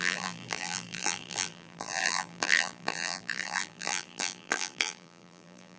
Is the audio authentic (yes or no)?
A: no